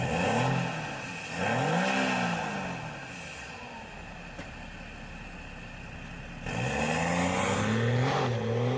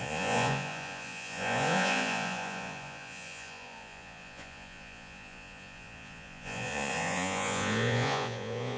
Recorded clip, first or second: first